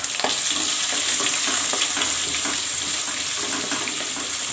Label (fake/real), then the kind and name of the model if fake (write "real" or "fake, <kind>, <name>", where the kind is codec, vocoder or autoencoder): real